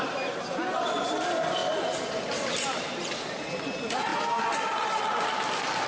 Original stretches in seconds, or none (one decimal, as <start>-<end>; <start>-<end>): 0.0-5.9